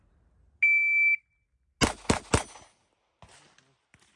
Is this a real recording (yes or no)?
yes